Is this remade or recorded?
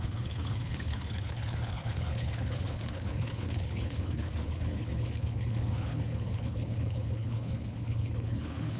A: remade